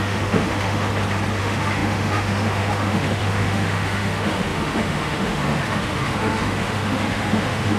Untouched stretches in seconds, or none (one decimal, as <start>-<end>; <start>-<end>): 0.9-1.4

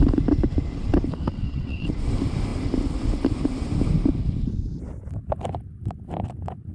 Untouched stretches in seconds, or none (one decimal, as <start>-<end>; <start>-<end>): 0.0-1.3; 1.9-6.7

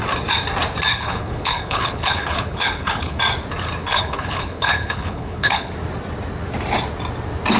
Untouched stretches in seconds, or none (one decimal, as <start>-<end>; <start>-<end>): 0.0-0.9; 3.2-3.8; 5.7-7.6

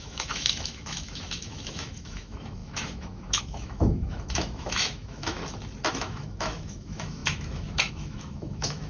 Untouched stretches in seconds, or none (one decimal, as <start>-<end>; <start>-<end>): 5.4-5.9

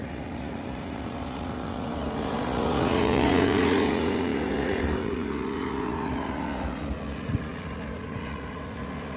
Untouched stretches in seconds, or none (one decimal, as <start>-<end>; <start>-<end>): none

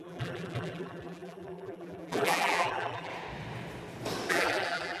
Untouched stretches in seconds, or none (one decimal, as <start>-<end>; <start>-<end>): 3.1-4.3

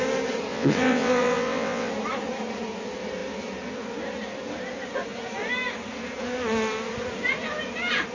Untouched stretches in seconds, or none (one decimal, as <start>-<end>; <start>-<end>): 0.0-0.5; 1.9-8.1

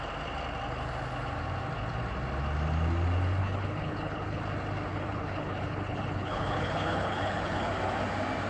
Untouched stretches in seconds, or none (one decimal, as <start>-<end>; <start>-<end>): 0.0-3.4; 4.4-4.9; 7.7-8.5